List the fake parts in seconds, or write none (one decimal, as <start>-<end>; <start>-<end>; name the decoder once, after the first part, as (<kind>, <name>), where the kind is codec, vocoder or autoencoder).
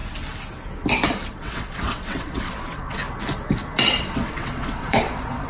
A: 1.3-3.0 (vocoder, WaveNeXt); 3.8-5.5